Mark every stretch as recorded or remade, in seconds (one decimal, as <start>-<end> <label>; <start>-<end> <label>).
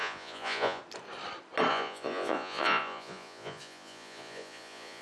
0.0-0.8 remade; 0.8-1.7 recorded; 1.7-5.0 remade